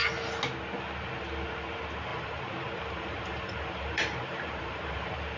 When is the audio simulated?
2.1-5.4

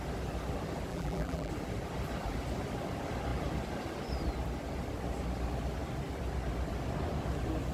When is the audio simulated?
0.9-1.5

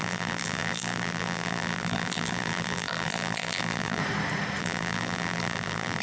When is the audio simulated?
0.0-4.0; 4.6-6.0

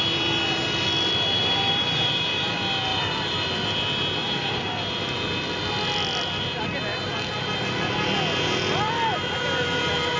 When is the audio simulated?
1.4-2.5; 2.9-3.5; 4.2-4.7

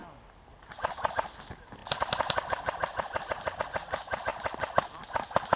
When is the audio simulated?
1.8-3.6; 4.3-5.6

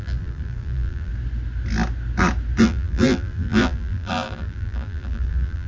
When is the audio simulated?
0.0-1.1; 2.6-5.7